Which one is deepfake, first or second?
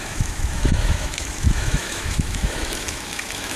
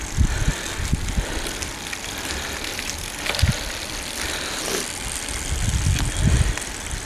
first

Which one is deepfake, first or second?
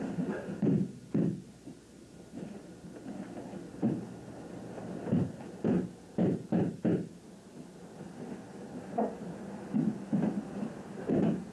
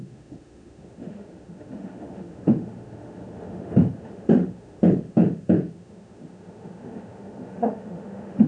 second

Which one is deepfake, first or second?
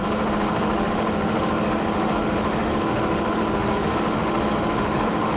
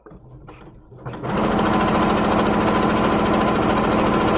first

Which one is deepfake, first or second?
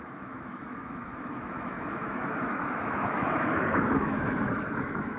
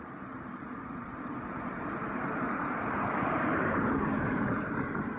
first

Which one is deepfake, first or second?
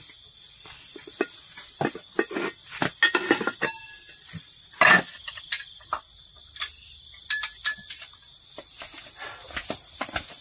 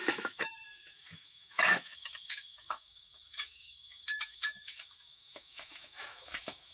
second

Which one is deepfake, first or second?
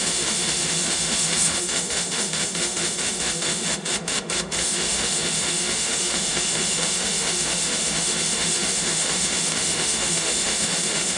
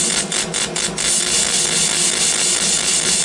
first